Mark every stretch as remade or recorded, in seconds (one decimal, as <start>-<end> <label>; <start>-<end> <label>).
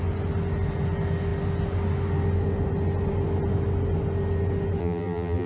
0.0-4.8 recorded; 4.8-5.5 remade